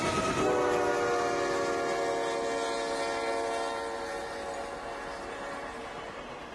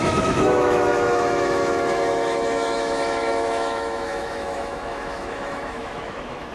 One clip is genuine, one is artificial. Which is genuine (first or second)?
first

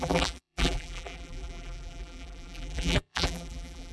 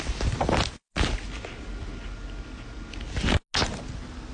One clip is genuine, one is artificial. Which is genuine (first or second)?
second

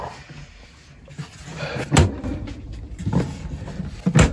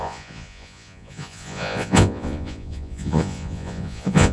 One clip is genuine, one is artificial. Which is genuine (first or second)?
first